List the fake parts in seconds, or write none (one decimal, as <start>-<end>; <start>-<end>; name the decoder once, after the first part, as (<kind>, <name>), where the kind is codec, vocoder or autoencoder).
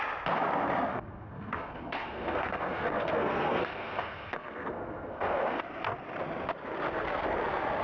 0.9-5.6 (codec, SNAC)